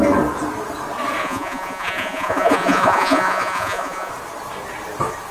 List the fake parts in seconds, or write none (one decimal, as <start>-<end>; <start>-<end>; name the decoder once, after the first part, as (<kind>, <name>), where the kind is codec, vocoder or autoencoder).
1.2-4.1 (vocoder, Vocos)